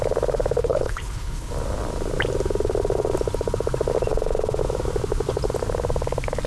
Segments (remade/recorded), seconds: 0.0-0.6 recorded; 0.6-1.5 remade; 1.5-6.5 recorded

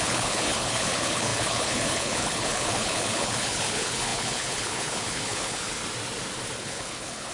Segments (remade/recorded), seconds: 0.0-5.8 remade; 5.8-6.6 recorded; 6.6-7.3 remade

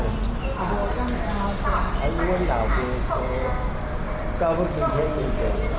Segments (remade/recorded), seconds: 0.0-5.8 recorded

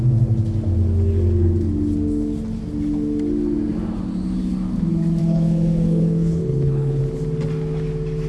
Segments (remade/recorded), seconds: 0.0-5.2 recorded; 5.2-7.0 remade; 7.0-8.3 recorded

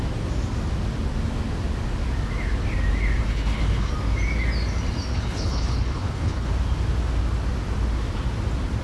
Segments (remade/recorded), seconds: 0.0-3.3 recorded; 3.3-3.9 remade; 3.9-5.1 recorded; 5.1-6.5 remade; 6.5-8.8 recorded

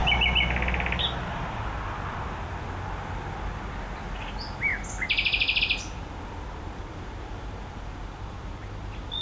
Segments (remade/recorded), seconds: 0.0-9.2 recorded

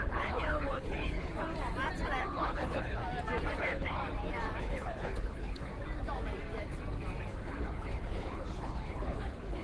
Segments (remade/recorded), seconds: 0.0-1.3 remade; 1.3-2.2 recorded; 2.2-3.0 remade; 3.0-3.6 recorded; 3.6-4.0 remade; 4.0-4.6 recorded; 4.6-5.7 remade; 5.7-7.3 recorded; 7.3-9.6 remade